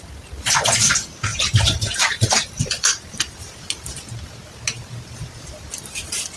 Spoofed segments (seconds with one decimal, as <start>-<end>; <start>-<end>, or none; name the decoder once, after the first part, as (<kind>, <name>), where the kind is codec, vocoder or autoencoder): 1.3-3.5 (vocoder, BigVGAN v2)

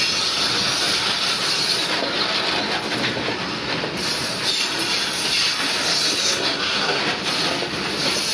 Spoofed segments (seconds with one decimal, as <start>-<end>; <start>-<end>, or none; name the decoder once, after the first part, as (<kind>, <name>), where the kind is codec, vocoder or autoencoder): 6.2-7.0 (codec, SNAC)

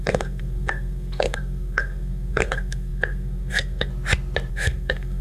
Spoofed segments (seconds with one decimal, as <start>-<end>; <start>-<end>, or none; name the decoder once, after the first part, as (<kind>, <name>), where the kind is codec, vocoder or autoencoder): 0.0-3.9 (codec, SNAC); 4.5-5.2

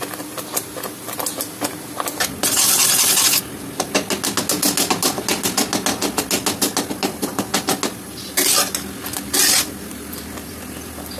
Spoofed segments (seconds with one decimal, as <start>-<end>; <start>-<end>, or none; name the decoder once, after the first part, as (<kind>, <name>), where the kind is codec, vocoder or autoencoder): none

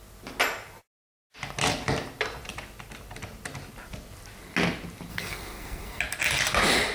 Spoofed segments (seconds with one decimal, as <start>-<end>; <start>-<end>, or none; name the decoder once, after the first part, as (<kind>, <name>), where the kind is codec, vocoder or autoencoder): 5.1-6.0 (codec, SNAC)

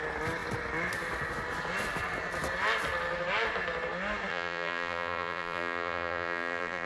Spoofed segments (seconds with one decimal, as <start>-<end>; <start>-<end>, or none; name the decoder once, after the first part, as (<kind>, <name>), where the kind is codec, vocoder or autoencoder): 4.3-6.9 (vocoder, BigVGAN v2)